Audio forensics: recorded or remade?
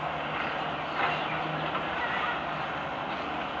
recorded